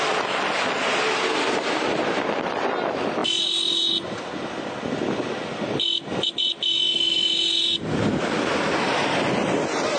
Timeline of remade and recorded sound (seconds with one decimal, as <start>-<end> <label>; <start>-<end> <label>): 0.0-10.0 recorded